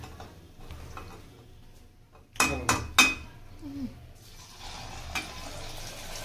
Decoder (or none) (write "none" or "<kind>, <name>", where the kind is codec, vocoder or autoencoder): none